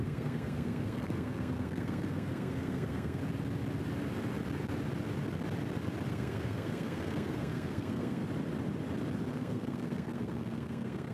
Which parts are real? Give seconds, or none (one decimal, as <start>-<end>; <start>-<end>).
3.2-6.1; 8.2-9.3